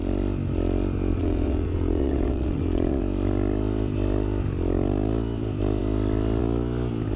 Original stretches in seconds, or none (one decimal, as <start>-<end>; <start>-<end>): 0.0-1.1; 3.0-7.2

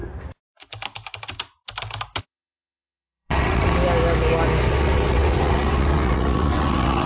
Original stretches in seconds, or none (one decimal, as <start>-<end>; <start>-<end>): 0.0-2.2; 3.8-4.7

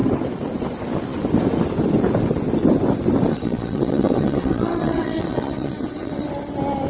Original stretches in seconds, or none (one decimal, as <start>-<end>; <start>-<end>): 0.0-3.3; 6.3-6.9

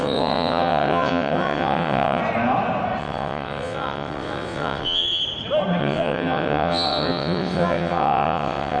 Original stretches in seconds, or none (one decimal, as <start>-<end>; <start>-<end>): 2.2-3.0; 5.2-5.8

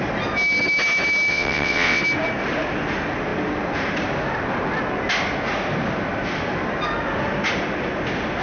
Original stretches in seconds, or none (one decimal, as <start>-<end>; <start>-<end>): 0.0-1.3; 2.0-8.4

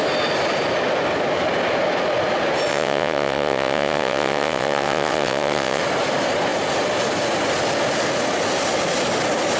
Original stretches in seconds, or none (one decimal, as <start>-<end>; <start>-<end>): 0.0-2.7; 5.8-9.6

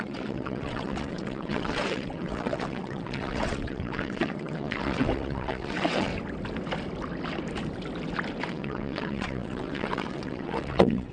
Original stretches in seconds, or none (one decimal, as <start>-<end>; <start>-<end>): 6.1-8.5